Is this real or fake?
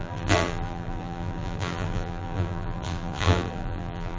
fake